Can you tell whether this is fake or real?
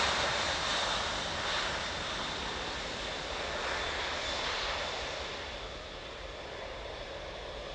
real